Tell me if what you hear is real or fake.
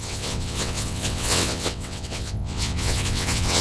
fake